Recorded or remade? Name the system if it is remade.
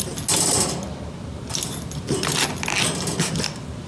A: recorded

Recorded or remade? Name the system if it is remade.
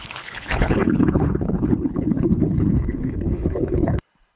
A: remade, codec, HILCodec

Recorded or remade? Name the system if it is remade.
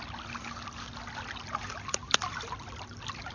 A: recorded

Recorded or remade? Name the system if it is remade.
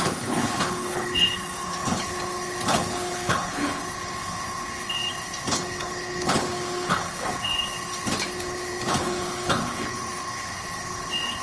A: remade, codec, HILCodec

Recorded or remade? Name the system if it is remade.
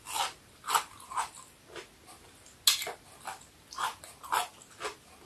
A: recorded